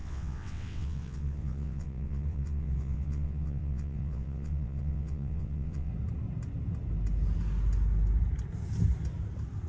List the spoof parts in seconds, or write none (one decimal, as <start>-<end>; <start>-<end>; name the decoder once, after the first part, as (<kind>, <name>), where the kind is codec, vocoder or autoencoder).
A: 0.0-5.9 (vocoder, WaveNeXt)